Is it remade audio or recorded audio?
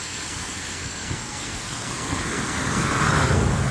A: remade